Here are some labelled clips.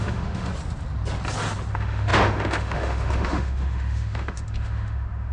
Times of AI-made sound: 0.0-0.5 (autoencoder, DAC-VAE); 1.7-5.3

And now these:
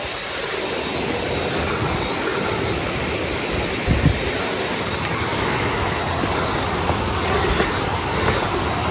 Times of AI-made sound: 5.3-6.0 (autoencoder, DAC-VAE)

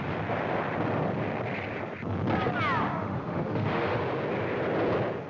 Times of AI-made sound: 2.8-4.0 (autoencoder, DAC-VAE)

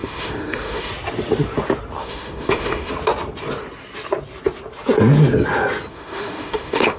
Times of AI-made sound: 0.0-0.9 (autoencoder, DAC-VAE); 2.0-2.9; 5.9-7.0

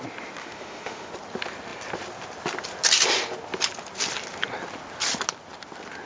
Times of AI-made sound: 0.4-1.1 (autoencoder, DAC-VAE)